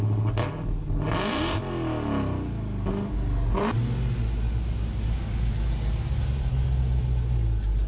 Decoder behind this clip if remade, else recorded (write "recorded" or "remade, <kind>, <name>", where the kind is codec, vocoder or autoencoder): recorded